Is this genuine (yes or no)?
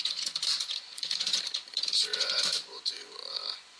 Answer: no